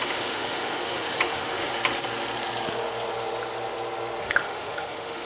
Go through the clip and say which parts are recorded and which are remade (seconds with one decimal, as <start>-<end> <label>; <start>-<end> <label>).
0.0-1.7 remade; 1.7-4.2 recorded; 4.2-5.3 remade